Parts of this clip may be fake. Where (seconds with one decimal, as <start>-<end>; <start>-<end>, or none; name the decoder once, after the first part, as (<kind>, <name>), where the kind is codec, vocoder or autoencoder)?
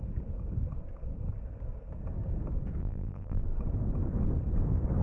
2.8-3.4 (vocoder, BigVGAN v2)